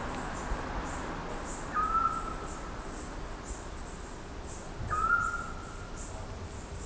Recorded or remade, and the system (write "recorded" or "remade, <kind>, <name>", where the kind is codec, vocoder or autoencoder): recorded